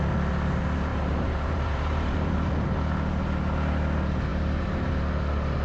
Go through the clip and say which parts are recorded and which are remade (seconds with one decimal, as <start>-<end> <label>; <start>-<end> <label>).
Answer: 0.0-0.9 recorded; 0.9-2.5 remade; 2.5-4.3 recorded; 4.3-4.9 remade; 4.9-5.6 recorded